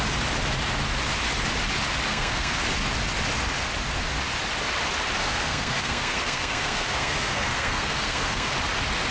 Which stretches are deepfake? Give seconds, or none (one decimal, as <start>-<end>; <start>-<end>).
2.1-2.6; 5.2-8.5